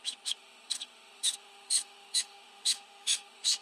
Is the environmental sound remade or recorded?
remade